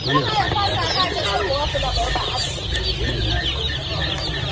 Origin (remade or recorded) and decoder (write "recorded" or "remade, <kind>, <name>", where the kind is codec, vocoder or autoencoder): recorded